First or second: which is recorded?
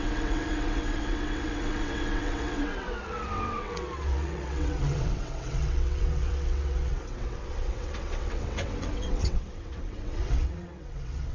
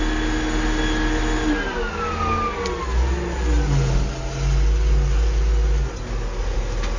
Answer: second